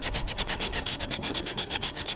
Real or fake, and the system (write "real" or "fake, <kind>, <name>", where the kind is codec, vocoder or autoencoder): fake, codec, SNAC